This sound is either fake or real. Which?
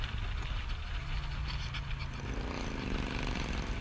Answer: real